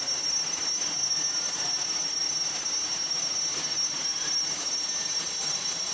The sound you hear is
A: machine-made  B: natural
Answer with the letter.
A